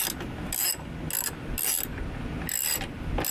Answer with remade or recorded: recorded